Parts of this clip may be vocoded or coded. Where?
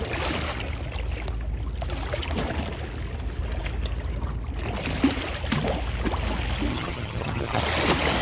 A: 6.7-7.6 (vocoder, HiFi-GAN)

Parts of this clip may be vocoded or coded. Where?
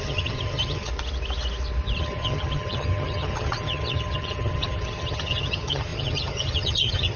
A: 0.0-0.9 (vocoder, HiFi-GAN); 2.0-7.2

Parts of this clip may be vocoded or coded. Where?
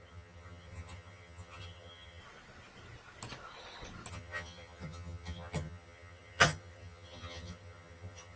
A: 0.0-2.2 (vocoder, HiFi-GAN); 4.1-8.4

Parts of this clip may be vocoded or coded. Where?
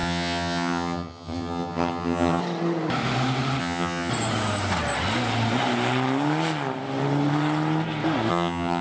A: 0.0-2.4 (vocoder, HiFi-GAN); 3.6-4.1; 8.3-8.8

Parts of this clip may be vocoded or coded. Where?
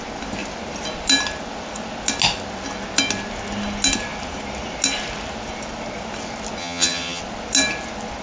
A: 6.6-7.2 (vocoder, HiFi-GAN)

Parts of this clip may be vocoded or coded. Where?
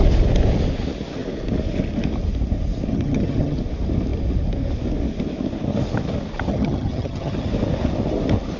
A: 2.9-3.6 (vocoder, HiFi-GAN); 6.5-7.5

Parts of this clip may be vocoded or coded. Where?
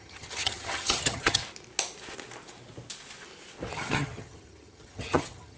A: 0.0-1.4 (vocoder, HiFi-GAN); 3.7-5.6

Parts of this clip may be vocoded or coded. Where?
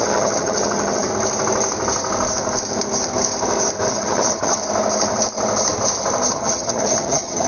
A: 0.0-1.1 (vocoder, HiFi-GAN); 3.9-4.6; 6.3-7.5